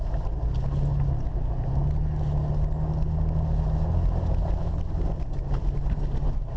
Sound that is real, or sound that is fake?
real